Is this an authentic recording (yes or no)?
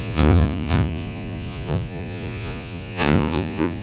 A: no